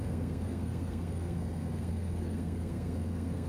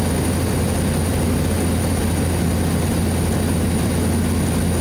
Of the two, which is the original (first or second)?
second